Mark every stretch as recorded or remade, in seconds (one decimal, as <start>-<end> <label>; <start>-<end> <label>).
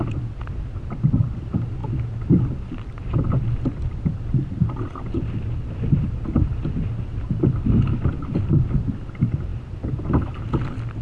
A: 0.0-11.0 recorded